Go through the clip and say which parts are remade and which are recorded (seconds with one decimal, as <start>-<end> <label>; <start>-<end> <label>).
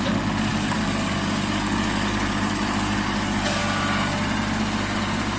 0.0-0.5 recorded; 0.5-3.6 remade; 3.6-5.4 recorded